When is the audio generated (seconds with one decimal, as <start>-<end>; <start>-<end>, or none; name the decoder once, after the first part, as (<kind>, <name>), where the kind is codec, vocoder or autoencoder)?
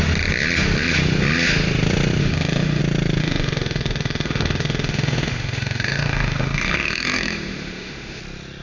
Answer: 2.2-2.8 (autoencoder, DAC-VAE); 3.2-8.2